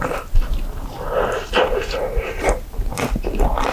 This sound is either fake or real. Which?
real